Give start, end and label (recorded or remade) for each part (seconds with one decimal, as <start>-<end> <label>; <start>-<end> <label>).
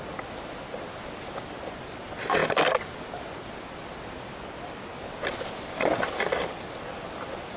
0.0-7.6 recorded